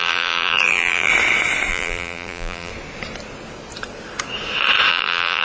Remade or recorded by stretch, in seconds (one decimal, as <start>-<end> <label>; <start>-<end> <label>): 0.0-1.1 remade; 1.1-1.7 recorded; 1.7-2.7 remade; 2.7-4.9 recorded; 4.9-5.4 remade